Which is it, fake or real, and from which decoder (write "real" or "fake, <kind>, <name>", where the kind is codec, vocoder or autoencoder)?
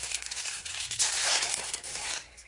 fake, codec, SNAC